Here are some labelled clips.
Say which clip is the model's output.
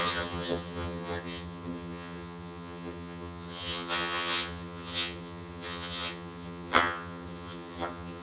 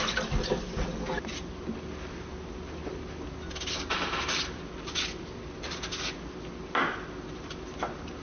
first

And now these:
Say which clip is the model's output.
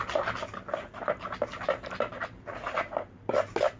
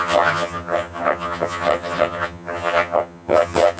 second